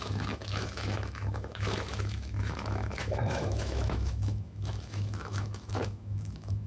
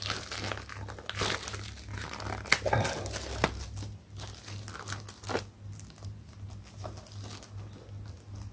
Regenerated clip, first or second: first